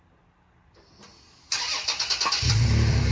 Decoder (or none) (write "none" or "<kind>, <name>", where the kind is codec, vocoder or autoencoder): none